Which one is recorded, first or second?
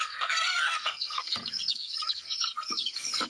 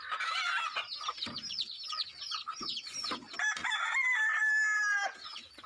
second